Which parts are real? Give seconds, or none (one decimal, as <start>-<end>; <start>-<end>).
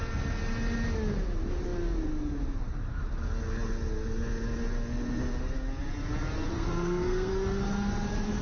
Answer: 0.0-6.5; 7.3-8.4